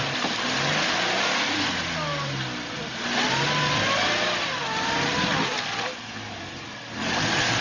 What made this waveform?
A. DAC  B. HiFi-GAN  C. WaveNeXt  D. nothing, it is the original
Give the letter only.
D